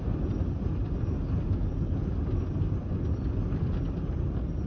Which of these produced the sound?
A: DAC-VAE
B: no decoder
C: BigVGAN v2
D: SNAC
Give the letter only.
B